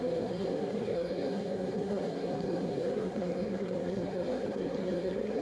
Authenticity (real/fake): fake